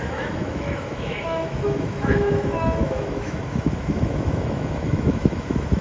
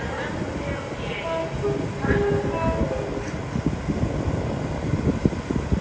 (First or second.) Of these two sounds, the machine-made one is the first